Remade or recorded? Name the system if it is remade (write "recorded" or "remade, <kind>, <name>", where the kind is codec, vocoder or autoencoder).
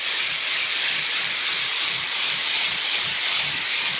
recorded